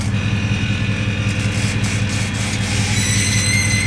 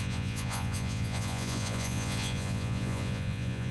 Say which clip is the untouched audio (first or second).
first